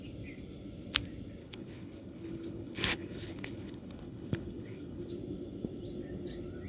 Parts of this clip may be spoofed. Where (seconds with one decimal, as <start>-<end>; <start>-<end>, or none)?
1.4-5.1